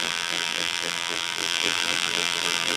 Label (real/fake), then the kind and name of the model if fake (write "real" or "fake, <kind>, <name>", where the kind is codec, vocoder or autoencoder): fake, vocoder, BigVGAN v2